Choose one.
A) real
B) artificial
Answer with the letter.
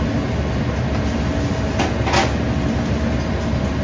A